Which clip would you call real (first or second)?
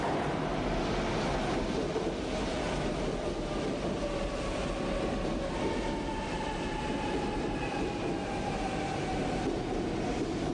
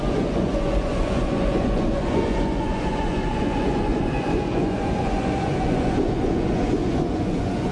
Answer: first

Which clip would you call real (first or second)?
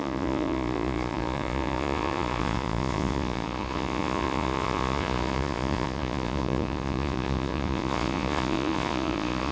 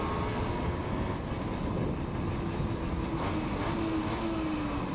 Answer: second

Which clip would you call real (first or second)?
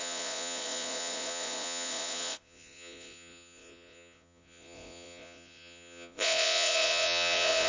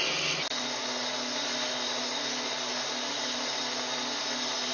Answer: second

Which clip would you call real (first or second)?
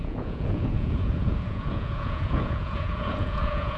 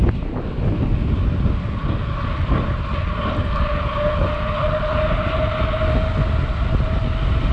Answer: second